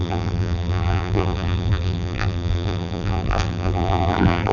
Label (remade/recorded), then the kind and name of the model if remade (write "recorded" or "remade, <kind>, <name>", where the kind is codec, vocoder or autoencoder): remade, vocoder, BigVGAN v2